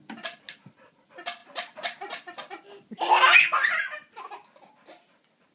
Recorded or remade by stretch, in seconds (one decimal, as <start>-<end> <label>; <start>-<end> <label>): 0.0-5.5 recorded